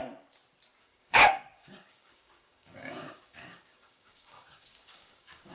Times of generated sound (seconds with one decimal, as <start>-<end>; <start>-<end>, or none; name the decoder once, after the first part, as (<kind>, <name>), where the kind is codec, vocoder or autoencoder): 0.8-5.5 (codec, DAC)